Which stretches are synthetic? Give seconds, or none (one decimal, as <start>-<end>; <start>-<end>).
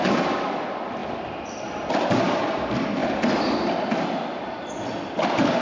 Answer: 0.0-1.0; 1.9-5.6